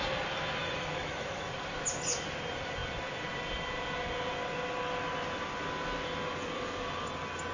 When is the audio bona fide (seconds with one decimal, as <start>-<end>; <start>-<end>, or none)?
0.0-0.6; 1.5-7.5